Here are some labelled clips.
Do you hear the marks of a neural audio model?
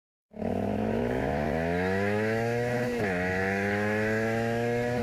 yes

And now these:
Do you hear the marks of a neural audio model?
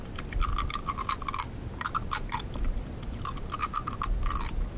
no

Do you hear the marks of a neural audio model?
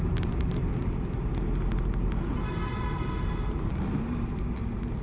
no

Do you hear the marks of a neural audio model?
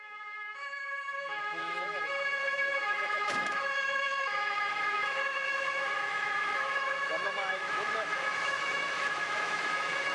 yes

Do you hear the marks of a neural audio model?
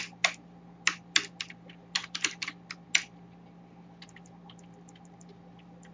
no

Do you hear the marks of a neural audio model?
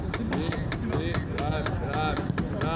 no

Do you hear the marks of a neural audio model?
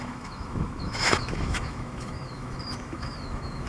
yes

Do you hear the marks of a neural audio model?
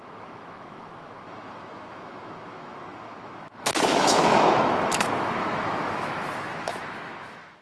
yes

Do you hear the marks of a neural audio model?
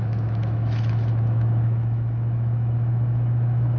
yes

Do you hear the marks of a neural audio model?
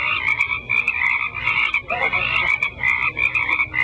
no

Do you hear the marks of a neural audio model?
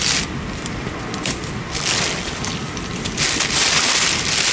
no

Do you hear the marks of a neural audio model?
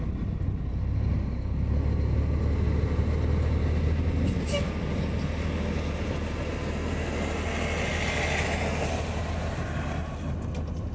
no